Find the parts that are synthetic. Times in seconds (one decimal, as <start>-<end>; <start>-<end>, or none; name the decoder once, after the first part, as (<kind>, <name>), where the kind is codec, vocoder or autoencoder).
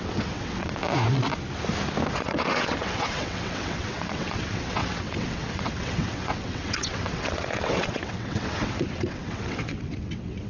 0.0-0.8 (vocoder, WaveNeXt); 2.1-10.5